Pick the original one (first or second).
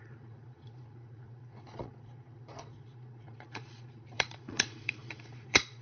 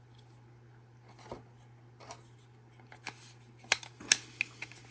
second